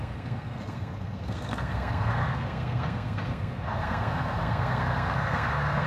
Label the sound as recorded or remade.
remade